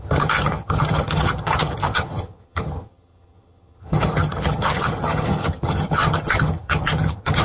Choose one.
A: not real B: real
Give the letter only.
A